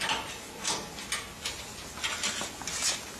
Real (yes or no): yes